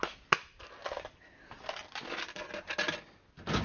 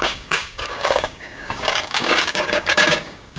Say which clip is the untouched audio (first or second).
first